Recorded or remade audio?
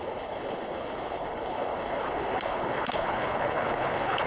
remade